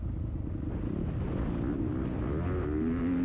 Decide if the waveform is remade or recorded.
recorded